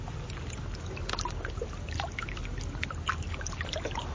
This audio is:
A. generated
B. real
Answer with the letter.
B